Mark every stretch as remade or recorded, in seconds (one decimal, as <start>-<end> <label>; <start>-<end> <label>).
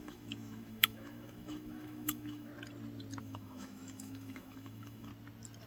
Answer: 0.0-2.5 remade; 2.5-3.2 recorded; 3.2-5.1 remade; 5.1-5.7 recorded